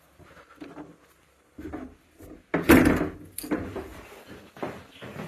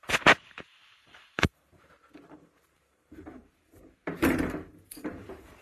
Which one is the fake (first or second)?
second